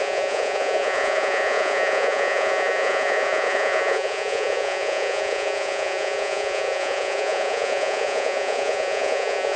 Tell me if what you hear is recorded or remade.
remade